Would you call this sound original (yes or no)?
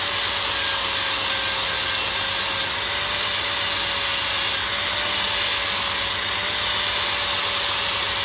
yes